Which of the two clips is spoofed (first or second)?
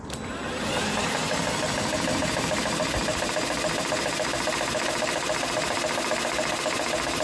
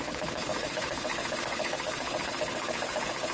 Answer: second